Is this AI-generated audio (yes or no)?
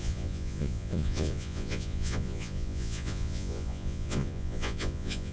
yes